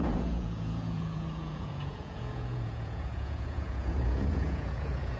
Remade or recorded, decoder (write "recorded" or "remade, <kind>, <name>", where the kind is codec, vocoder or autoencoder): remade, vocoder, Vocos